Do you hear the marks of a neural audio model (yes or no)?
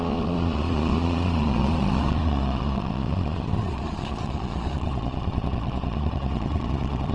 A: yes